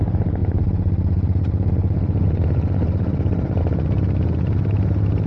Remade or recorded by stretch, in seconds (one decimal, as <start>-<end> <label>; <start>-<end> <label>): 0.0-5.3 recorded